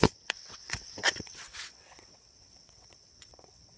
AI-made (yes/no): yes